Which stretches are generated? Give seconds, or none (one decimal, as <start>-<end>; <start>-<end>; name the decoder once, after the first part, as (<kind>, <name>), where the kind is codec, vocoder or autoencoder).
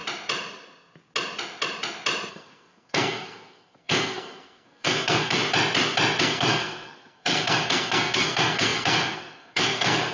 2.3-5.4 (codec, SNAC); 6.2-10.1